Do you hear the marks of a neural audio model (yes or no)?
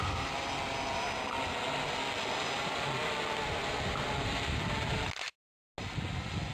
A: no